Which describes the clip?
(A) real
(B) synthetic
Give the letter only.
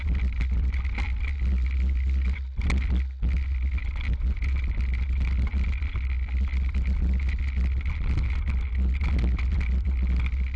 A